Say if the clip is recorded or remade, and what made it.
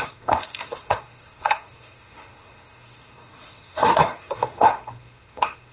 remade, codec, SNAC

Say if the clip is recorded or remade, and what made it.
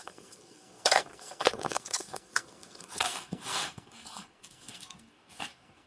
remade, codec, SNAC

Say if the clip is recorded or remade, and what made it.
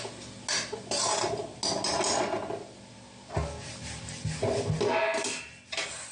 recorded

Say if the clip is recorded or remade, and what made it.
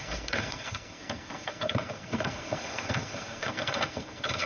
remade, codec, SNAC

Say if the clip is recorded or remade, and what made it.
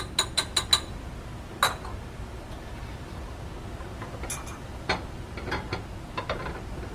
recorded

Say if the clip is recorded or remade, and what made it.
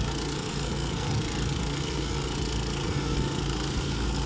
remade, codec, SNAC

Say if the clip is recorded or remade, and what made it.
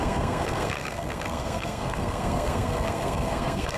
remade, codec, SNAC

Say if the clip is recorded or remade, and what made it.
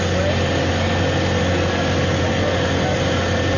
recorded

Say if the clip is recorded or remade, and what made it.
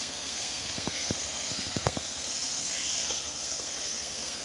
remade, codec, SNAC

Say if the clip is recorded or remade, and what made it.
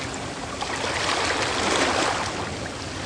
recorded